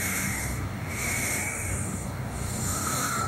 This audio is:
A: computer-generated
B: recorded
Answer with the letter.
A